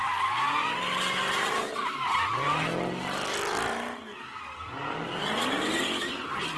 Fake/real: real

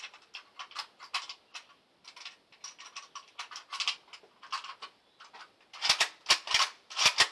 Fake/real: real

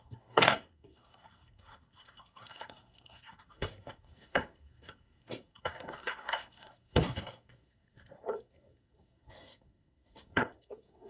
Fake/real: fake